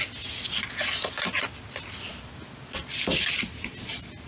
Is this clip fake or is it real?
real